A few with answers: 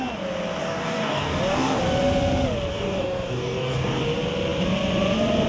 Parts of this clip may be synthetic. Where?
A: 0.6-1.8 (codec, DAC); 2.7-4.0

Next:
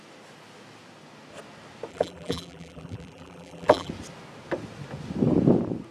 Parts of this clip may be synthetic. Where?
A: 1.9-3.9 (vocoder, BigVGAN v2)

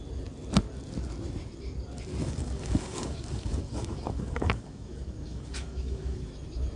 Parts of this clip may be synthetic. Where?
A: 2.2-6.3 (codec, DAC)

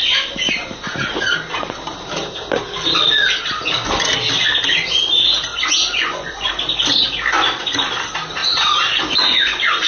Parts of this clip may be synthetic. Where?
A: 5.5-6.5 (vocoder, Vocos)

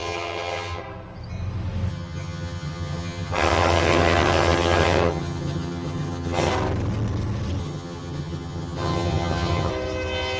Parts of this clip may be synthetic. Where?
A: 0.0-0.8 (vocoder, HiFi-GAN); 1.9-6.5; 7.6-9.7

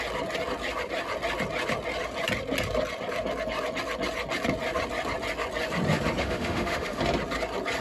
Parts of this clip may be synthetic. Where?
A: 6.2-7.0 (autoencoder, DAC-VAE)

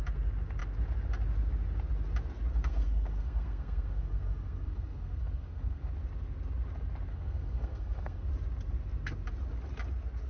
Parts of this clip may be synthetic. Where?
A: 2.5-5.9 (codec, SNAC); 7.1-8.3